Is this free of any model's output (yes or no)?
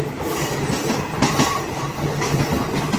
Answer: yes